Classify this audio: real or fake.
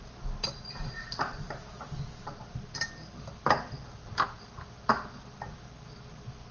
real